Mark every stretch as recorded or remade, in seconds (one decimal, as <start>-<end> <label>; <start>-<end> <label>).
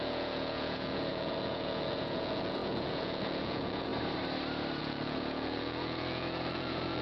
0.0-3.9 remade; 3.9-4.8 recorded; 4.8-7.0 remade